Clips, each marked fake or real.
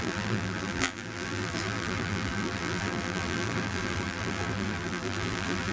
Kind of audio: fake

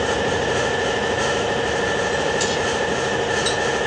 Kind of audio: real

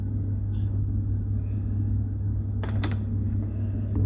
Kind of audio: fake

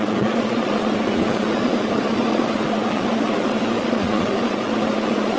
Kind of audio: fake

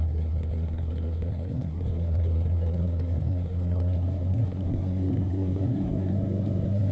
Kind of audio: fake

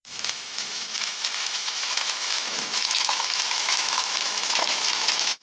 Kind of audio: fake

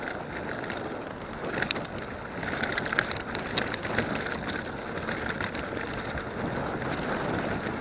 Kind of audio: real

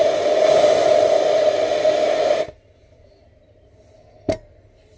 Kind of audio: real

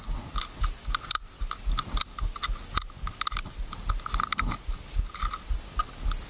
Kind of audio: real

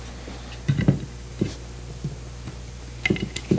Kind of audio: real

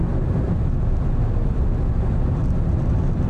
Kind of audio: real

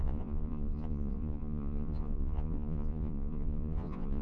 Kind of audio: fake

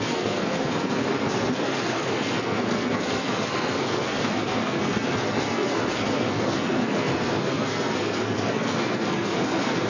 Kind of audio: fake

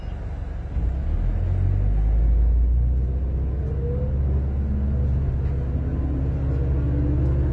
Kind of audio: real